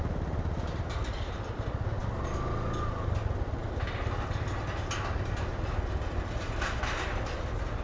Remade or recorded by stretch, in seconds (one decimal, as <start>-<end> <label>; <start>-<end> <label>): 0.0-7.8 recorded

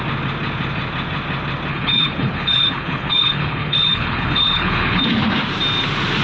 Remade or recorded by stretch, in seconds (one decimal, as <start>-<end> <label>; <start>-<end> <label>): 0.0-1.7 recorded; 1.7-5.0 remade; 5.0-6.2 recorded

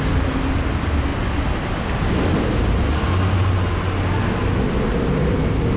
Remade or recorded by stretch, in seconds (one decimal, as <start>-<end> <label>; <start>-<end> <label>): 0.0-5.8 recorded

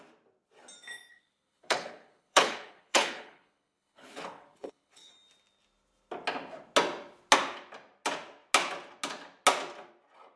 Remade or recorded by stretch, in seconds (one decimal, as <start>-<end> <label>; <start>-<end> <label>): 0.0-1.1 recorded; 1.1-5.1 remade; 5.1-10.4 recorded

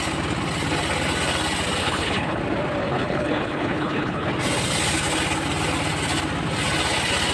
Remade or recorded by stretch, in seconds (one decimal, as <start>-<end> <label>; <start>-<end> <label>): 0.0-1.8 recorded; 1.8-2.4 remade; 2.4-2.8 recorded; 2.8-4.3 remade; 4.3-7.3 recorded